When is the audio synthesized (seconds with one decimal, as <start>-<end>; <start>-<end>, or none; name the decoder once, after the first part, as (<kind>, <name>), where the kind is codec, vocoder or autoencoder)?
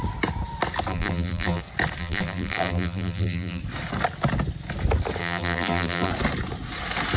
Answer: 0.9-1.6 (vocoder, BigVGAN v2); 2.0-3.6; 5.2-6.1